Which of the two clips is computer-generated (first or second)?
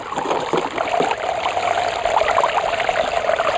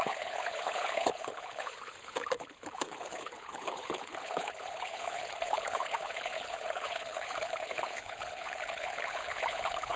second